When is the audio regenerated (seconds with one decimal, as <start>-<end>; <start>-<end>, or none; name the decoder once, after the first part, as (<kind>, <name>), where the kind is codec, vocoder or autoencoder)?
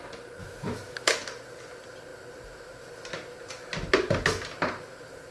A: 0.4-1.1 (autoencoder, DAC-VAE)